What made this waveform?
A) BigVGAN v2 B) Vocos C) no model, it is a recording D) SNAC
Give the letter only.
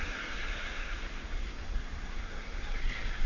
D